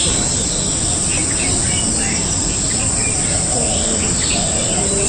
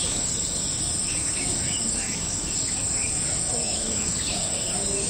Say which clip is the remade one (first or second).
second